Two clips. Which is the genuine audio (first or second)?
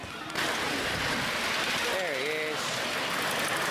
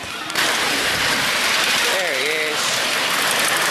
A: first